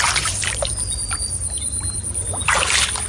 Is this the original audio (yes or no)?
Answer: no